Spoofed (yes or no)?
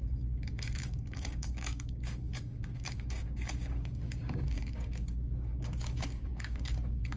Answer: yes